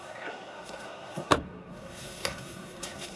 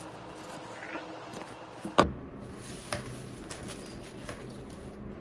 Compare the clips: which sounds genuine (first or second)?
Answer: second